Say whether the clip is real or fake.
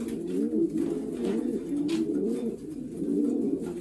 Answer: real